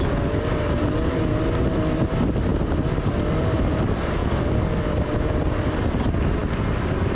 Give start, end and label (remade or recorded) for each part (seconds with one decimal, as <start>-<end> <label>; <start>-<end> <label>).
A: 0.0-4.2 recorded; 4.2-6.0 remade; 6.0-7.2 recorded